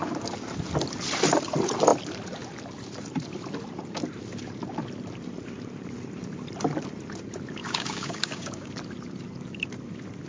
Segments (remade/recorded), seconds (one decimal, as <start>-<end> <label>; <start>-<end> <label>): 0.0-7.6 recorded; 7.6-8.7 remade; 8.7-10.3 recorded

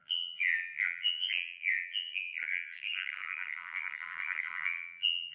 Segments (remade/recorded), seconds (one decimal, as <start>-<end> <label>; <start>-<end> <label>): 0.0-5.3 remade

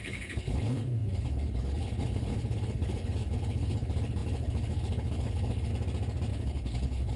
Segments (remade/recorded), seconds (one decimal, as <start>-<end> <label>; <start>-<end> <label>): 0.0-5.7 remade; 5.7-6.3 recorded; 6.3-7.2 remade